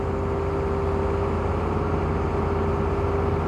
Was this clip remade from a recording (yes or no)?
no